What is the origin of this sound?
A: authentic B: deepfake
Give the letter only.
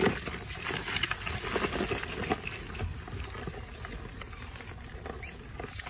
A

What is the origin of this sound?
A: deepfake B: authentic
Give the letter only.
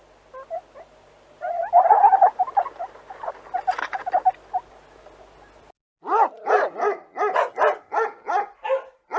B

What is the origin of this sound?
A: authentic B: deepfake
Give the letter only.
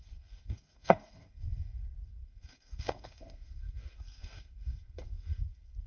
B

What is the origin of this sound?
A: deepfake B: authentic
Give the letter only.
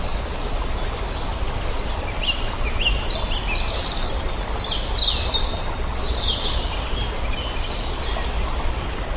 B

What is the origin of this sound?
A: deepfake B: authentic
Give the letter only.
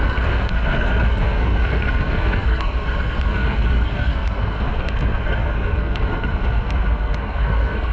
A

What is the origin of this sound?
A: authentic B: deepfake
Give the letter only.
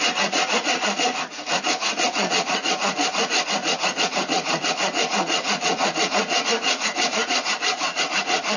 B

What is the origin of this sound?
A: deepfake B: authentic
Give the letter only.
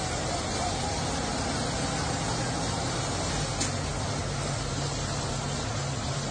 B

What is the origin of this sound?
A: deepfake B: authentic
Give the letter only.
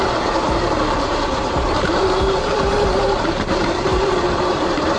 A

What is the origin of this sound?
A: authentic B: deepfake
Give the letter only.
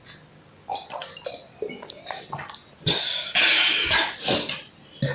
A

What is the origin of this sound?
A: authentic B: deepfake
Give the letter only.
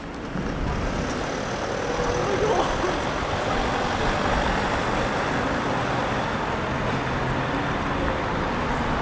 A